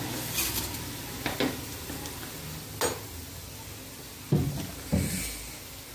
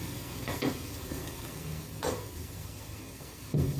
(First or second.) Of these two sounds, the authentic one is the first